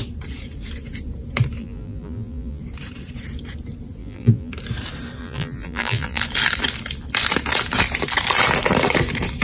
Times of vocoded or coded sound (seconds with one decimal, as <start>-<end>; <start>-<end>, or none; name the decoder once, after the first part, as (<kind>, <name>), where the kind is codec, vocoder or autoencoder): 1.6-2.6 (vocoder, BigVGAN v2); 4.0-4.5; 5.2-6.2